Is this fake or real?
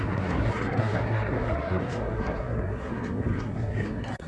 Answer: fake